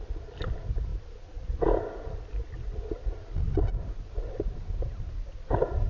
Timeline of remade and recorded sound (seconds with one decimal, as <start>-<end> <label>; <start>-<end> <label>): 0.0-5.9 recorded